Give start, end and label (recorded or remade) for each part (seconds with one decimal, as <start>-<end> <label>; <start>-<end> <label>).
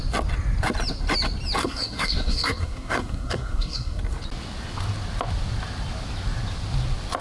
0.0-1.6 recorded; 1.6-4.0 remade; 4.0-7.2 recorded